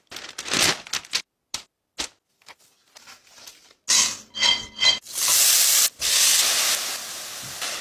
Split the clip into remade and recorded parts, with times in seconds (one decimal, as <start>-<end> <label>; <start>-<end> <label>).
0.0-7.8 recorded